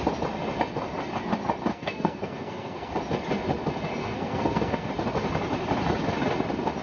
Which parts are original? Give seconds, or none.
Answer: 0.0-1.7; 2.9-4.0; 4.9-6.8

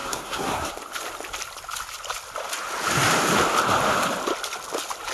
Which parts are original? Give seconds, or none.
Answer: 0.7-5.1

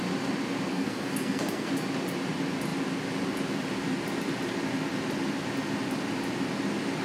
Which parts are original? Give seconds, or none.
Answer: 0.0-0.7; 1.7-7.0

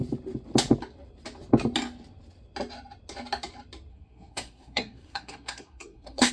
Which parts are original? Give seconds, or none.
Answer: 0.0-3.9